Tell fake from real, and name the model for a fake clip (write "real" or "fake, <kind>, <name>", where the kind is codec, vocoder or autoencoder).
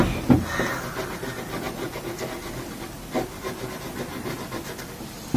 real